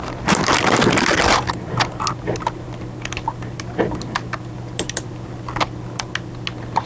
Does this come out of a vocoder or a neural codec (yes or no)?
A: no